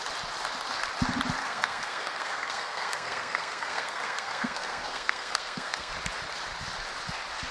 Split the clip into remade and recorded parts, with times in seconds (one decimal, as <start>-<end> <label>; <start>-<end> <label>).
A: 0.0-1.4 recorded; 1.4-5.9 remade; 5.9-7.5 recorded